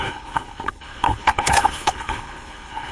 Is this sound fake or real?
fake